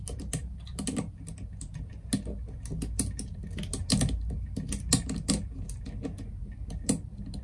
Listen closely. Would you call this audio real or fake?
real